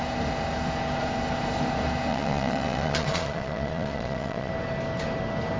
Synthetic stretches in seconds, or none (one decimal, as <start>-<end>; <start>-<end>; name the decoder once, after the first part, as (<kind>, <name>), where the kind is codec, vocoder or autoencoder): 2.1-4.5 (vocoder, Vocos)